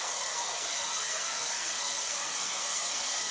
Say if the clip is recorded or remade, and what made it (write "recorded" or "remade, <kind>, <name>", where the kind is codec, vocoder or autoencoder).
remade, codec, SNAC